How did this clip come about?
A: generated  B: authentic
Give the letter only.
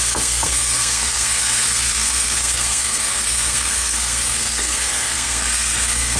A